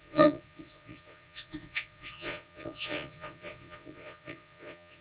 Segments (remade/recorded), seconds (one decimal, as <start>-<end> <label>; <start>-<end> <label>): 0.0-5.0 remade